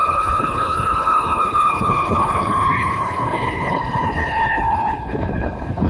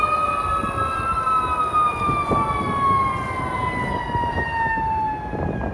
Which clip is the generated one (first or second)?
first